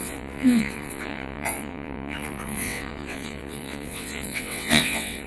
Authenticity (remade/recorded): remade